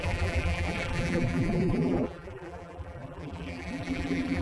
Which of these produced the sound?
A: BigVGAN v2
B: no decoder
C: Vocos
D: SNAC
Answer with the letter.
A